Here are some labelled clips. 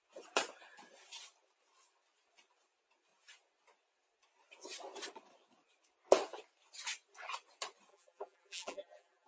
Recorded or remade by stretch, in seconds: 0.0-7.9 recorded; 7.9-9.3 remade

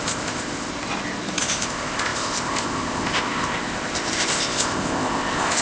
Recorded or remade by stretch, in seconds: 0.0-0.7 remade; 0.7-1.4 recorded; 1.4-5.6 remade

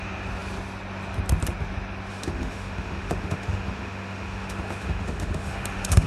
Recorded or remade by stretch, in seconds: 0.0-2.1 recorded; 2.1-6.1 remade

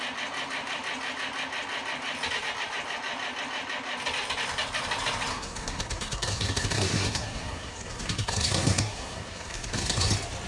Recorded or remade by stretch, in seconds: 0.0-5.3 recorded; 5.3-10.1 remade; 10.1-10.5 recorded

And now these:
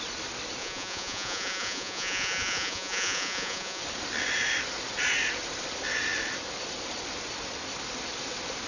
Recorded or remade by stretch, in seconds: 0.0-0.6 recorded; 0.6-3.8 remade; 3.8-8.7 recorded